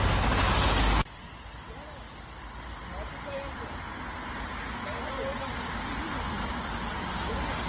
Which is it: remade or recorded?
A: recorded